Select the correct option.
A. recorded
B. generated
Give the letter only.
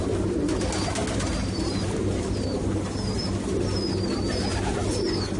A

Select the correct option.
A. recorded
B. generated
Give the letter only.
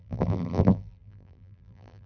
B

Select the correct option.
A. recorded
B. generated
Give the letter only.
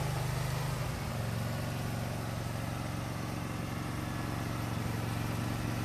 A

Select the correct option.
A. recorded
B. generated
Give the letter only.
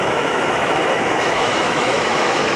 B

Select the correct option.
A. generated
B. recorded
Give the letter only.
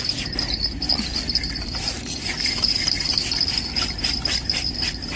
B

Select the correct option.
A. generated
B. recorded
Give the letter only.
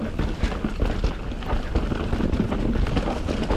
B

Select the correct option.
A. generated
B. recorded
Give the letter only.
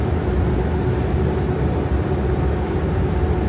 B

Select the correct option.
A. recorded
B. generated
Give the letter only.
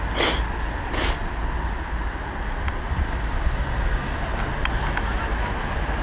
A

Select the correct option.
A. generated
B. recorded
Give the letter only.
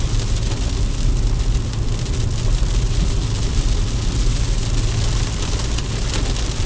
B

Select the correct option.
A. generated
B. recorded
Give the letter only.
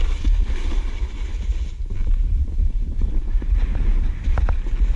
B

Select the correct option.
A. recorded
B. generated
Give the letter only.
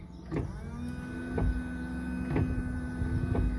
A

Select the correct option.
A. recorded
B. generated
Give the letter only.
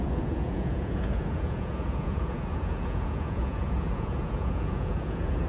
B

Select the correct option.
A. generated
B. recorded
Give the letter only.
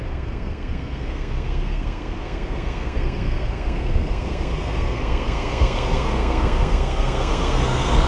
A